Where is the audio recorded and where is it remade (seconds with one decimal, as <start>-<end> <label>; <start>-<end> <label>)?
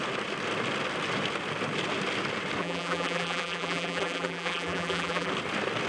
0.0-2.6 recorded; 2.6-5.3 remade; 5.3-5.9 recorded